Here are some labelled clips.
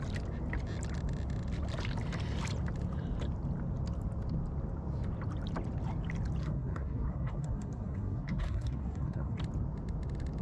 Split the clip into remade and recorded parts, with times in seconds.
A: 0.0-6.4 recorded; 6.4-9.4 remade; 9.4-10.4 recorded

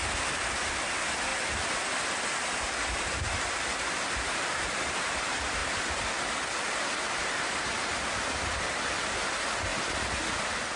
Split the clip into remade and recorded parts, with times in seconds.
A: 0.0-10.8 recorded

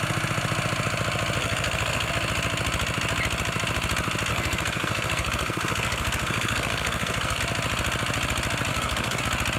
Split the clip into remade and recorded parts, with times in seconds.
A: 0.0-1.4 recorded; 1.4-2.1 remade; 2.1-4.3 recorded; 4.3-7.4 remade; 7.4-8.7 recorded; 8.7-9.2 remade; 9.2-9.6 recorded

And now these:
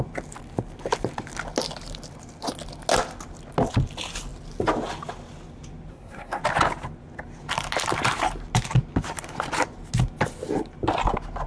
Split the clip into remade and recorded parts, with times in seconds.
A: 0.0-5.9 recorded; 5.9-6.4 remade; 6.4-11.5 recorded

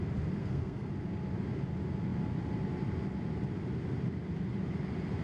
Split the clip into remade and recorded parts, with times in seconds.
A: 0.0-0.4 recorded; 0.4-0.9 remade; 0.9-5.2 recorded

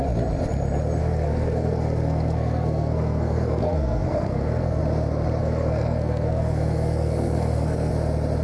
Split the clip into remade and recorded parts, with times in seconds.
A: 0.0-1.0 recorded; 1.0-4.8 remade; 4.8-5.4 recorded; 5.4-7.9 remade; 7.9-8.4 recorded

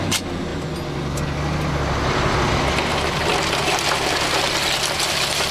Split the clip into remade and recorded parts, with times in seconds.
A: 0.0-5.5 recorded

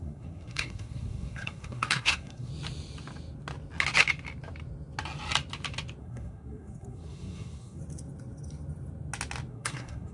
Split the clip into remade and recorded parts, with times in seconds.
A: 0.0-2.5 remade; 2.5-6.0 recorded; 6.0-7.8 remade; 7.8-9.5 recorded; 9.5-10.1 remade